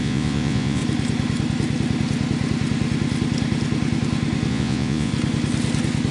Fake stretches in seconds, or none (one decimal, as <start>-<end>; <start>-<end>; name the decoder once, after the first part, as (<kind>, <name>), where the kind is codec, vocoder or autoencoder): 0.0-0.8 (vocoder, Vocos); 4.5-5.1